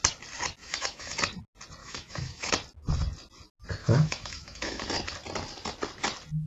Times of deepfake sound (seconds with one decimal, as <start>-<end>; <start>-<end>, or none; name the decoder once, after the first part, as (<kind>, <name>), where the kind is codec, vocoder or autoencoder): 0.6-1.2 (autoencoder, DAC-VAE); 1.8-2.5; 3.8-4.8